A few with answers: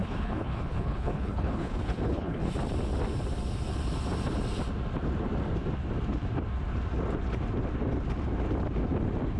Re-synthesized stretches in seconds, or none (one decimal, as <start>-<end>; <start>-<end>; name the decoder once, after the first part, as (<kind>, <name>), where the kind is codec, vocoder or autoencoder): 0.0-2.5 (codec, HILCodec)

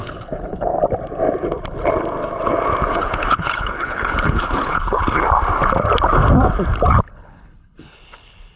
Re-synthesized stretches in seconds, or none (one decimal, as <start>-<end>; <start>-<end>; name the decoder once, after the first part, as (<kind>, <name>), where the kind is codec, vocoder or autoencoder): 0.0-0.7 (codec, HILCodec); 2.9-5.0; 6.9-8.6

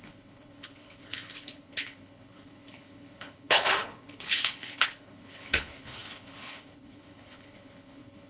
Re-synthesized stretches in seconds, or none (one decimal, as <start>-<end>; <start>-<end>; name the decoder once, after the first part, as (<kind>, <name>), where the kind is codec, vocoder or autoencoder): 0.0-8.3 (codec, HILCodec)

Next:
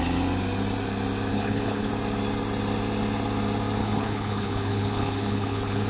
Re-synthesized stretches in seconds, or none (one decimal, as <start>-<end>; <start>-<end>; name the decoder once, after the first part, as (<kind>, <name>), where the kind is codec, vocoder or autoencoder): 1.3-1.9 (codec, HILCodec); 3.8-5.9